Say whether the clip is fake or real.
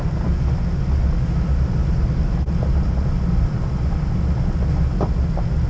real